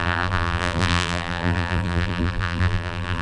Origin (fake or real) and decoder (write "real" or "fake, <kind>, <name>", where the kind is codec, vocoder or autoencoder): fake, vocoder, BigVGAN v2